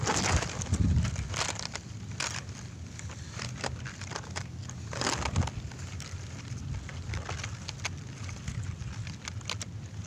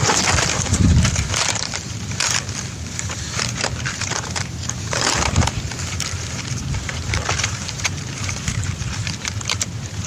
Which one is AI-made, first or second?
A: second